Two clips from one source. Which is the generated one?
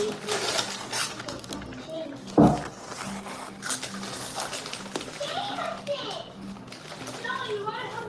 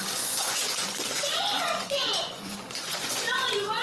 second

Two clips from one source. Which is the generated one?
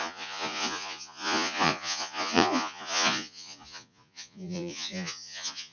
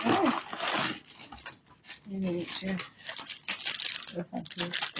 first